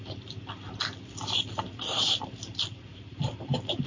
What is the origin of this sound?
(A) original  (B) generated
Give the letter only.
A